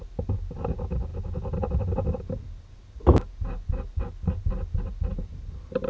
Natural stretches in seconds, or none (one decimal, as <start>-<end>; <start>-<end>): 0.0-5.9